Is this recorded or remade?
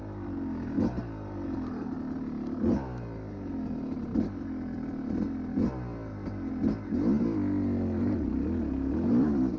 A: recorded